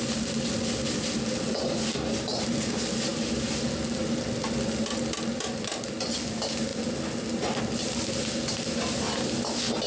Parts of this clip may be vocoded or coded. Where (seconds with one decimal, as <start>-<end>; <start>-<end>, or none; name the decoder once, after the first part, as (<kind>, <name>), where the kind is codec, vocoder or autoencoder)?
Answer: none

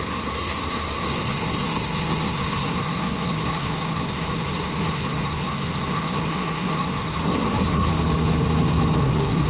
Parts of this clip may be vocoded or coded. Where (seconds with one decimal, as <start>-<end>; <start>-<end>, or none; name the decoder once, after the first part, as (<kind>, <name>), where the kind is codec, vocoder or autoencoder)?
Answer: 0.0-7.9 (codec, SNAC); 9.0-9.5

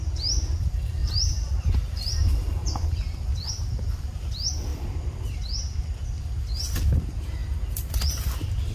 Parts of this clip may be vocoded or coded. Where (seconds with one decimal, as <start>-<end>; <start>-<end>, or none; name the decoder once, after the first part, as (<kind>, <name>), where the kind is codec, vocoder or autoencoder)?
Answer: 1.0-3.5 (vocoder, BigVGAN v2)